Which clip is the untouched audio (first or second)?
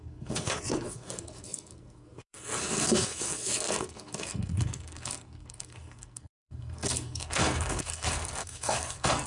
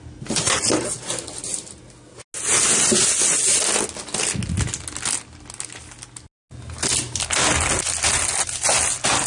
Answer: second